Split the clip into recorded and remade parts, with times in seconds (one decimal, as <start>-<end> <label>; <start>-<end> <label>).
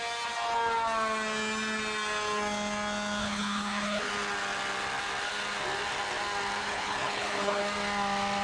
0.0-3.2 recorded; 3.2-4.1 remade; 4.1-6.6 recorded; 6.6-7.6 remade; 7.6-8.4 recorded